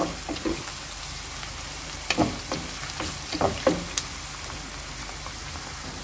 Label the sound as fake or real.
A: real